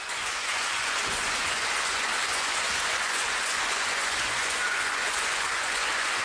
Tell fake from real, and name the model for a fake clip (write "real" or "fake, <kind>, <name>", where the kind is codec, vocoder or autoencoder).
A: fake, vocoder, Vocos